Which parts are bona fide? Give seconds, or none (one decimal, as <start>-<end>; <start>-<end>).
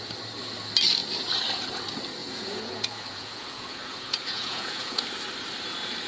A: 0.0-2.2; 5.0-6.1